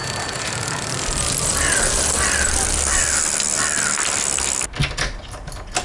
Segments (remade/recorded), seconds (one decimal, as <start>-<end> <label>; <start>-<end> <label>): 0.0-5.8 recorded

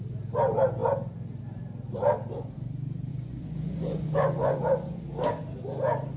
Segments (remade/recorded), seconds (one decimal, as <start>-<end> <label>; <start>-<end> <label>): 0.0-3.1 recorded; 3.1-5.0 remade; 5.0-6.2 recorded

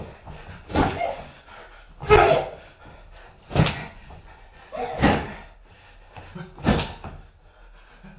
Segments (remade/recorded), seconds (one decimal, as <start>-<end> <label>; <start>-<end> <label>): 0.0-1.6 remade; 1.6-3.7 recorded; 3.7-4.6 remade; 4.6-8.2 recorded